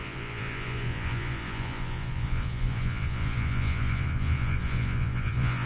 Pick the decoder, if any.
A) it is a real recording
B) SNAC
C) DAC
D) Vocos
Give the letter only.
D